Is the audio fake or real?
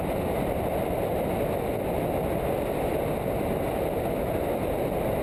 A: real